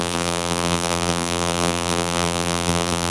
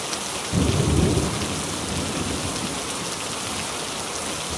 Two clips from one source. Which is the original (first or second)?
second